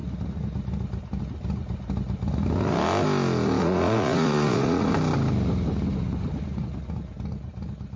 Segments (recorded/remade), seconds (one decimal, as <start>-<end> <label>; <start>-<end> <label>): 0.0-3.6 recorded; 3.6-4.9 remade; 4.9-8.0 recorded